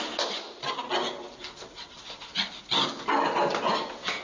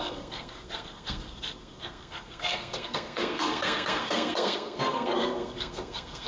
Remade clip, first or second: second